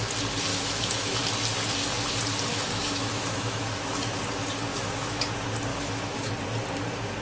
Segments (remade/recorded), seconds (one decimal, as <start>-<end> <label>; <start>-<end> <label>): 0.0-0.5 recorded; 0.5-1.2 remade; 1.2-2.5 recorded; 2.5-4.2 remade; 4.2-4.7 recorded; 4.7-5.3 remade; 5.3-5.7 recorded; 5.7-6.3 remade; 6.3-7.2 recorded